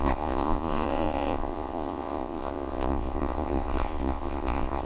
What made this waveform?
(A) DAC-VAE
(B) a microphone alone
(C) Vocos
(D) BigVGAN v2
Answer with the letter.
C